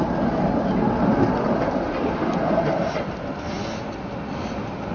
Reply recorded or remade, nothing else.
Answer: recorded